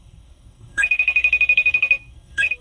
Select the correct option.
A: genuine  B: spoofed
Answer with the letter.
B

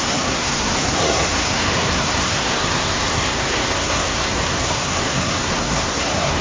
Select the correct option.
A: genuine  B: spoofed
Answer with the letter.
B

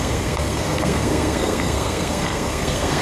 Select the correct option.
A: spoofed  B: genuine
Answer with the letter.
A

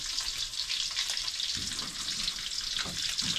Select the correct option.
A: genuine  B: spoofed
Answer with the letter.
A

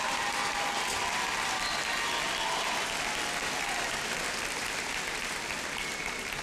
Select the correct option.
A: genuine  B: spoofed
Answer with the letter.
A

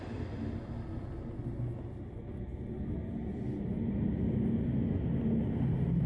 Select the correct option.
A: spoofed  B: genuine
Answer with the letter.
B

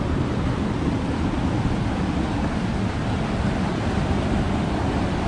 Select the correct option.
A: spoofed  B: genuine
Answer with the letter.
B